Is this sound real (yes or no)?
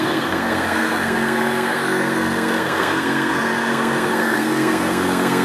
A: no